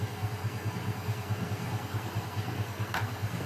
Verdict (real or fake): fake